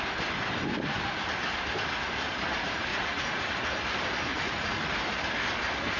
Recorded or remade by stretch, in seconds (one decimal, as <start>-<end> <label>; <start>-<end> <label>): 0.0-2.9 recorded; 2.9-3.5 remade; 3.5-4.3 recorded; 4.3-4.9 remade; 4.9-6.0 recorded